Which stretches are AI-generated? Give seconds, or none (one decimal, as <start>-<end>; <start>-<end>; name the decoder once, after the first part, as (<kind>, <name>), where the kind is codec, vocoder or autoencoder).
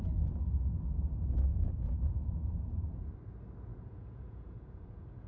1.5-2.9 (vocoder, Vocos); 3.7-5.3